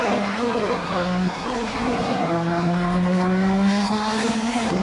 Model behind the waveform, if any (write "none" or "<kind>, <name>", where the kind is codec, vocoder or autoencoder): codec, SNAC